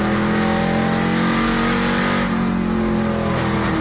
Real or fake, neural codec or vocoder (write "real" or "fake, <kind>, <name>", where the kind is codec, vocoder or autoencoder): real